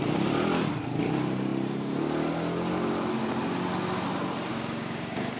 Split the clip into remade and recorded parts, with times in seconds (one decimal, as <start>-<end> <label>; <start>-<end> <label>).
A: 0.0-4.5 recorded; 4.5-5.4 remade